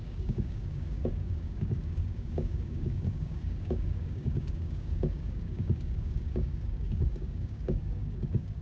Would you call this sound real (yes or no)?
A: no